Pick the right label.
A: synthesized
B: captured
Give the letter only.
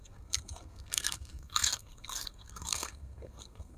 A